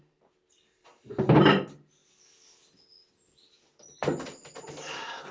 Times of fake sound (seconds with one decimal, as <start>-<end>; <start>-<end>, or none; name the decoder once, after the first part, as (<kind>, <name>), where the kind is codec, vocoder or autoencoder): 0.0-2.0 (vocoder, BigVGAN v2)